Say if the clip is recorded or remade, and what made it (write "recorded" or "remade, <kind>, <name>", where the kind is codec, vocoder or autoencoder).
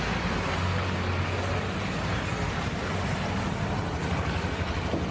recorded